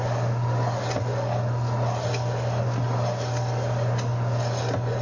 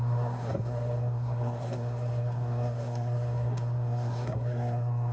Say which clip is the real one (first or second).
first